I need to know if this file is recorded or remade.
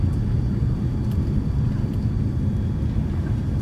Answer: recorded